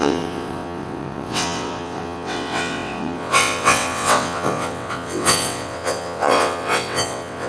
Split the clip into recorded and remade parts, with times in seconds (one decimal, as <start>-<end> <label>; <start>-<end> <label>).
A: 0.0-7.5 remade